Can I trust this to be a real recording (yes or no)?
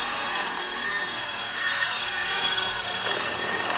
no